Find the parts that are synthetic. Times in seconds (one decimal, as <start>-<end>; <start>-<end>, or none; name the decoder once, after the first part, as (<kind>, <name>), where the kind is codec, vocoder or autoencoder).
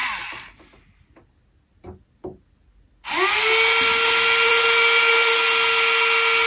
none